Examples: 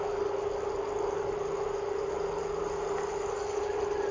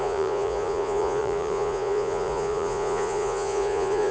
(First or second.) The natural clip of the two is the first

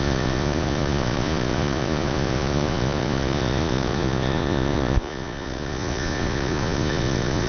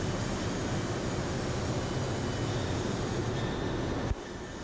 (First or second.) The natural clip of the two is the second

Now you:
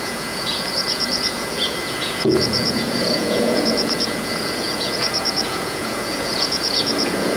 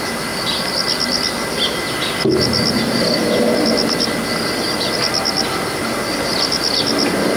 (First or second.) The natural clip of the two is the second